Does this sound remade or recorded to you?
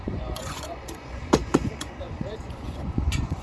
remade